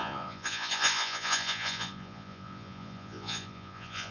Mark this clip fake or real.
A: fake